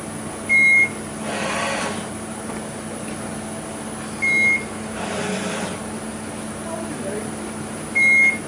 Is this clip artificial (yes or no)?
no